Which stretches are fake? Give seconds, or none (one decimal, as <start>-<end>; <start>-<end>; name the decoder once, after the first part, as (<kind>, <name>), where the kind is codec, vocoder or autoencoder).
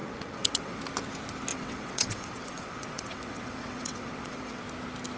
0.0-0.8 (vocoder, WaveNeXt); 1.5-4.6